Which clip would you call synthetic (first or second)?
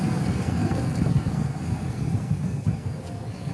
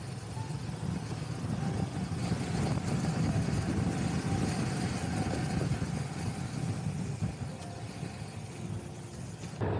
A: first